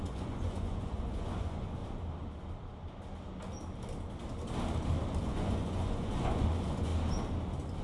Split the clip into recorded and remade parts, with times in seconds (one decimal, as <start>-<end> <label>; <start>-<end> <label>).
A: 0.0-1.8 remade; 1.8-5.2 recorded; 5.2-6.9 remade; 6.9-7.8 recorded